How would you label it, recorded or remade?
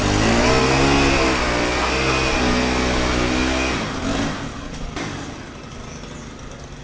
recorded